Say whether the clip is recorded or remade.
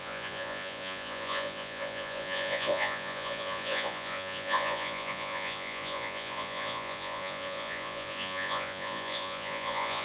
remade